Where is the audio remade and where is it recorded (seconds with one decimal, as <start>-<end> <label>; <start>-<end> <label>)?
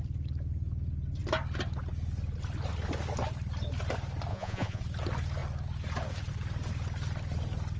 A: 0.0-4.3 recorded; 4.3-4.8 remade; 4.8-7.8 recorded